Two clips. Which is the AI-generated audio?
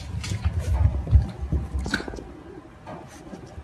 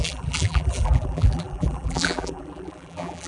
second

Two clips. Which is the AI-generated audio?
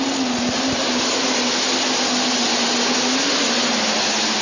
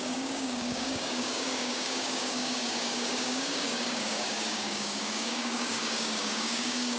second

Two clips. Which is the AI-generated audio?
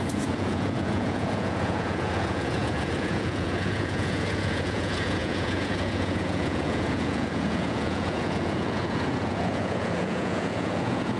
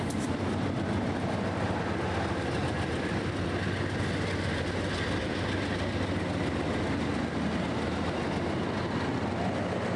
first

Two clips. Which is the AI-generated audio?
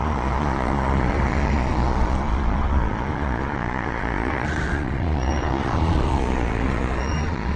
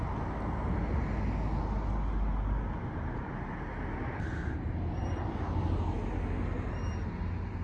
first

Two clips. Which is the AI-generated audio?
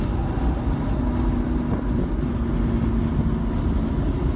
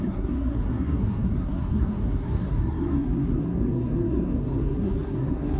second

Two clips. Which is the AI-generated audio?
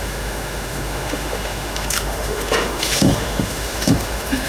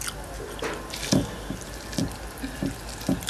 first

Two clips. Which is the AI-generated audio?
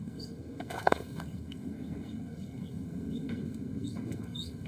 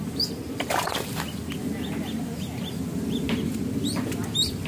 first